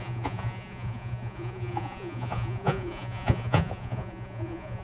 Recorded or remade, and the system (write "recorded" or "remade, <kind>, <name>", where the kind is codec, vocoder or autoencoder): remade, vocoder, Vocos